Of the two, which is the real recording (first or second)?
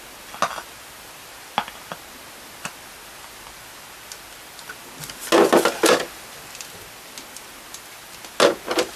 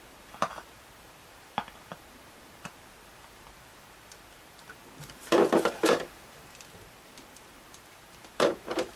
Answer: first